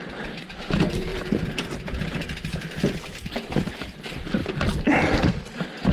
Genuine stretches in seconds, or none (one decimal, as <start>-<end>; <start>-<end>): 4.4-5.4